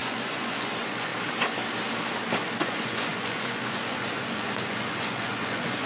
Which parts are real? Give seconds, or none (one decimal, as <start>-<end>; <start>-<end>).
1.1-2.6